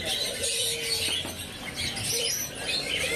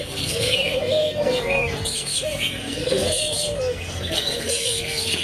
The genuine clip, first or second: first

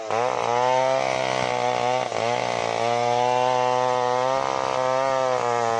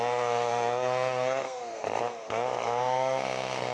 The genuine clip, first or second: first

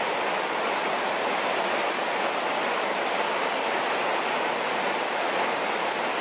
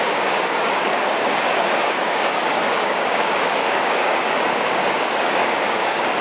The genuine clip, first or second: first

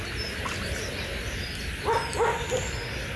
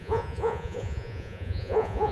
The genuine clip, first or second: first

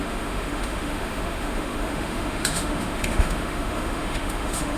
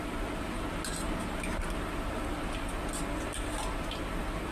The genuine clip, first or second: second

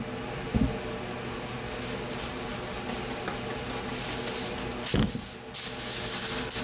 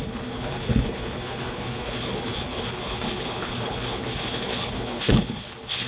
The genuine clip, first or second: first